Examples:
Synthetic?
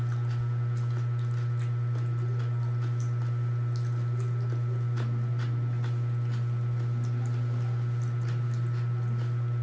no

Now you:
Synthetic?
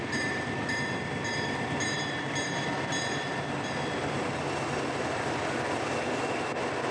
no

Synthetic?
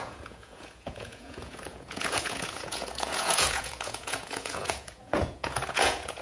yes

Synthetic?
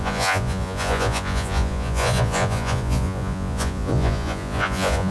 yes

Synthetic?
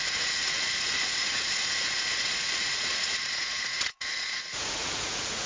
yes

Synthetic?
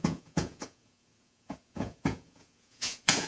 yes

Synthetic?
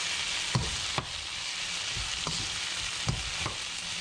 no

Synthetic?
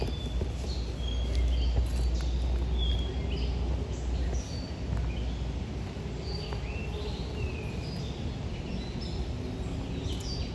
no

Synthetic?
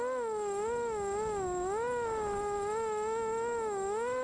no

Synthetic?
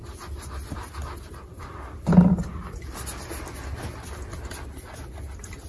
no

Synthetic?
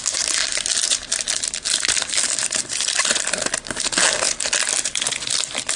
no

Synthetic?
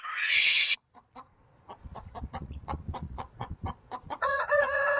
yes